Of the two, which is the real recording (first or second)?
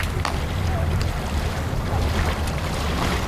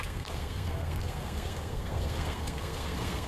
first